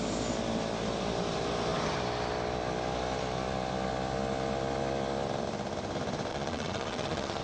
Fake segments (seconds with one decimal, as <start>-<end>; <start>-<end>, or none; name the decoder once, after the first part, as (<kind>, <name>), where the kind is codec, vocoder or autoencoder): 6.3-7.4 (vocoder, Vocos)